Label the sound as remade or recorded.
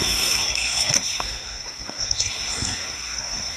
remade